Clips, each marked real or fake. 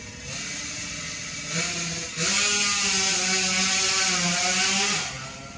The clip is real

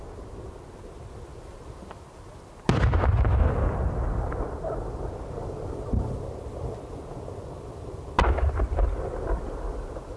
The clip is real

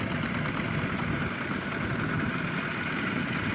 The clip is real